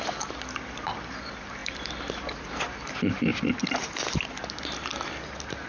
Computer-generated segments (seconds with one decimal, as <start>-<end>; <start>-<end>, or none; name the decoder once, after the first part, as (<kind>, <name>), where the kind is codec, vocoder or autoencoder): none